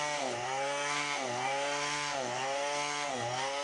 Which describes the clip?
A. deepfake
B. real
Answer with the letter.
A